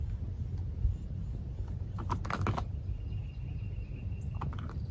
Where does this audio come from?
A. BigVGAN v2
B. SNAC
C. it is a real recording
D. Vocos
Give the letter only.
C